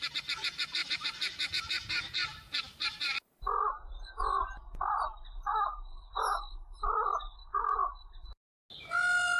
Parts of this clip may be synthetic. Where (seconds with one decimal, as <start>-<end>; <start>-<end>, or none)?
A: 0.8-1.5; 2.3-3.9